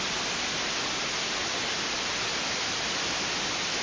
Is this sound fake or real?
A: real